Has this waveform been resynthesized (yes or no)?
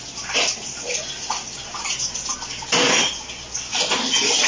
no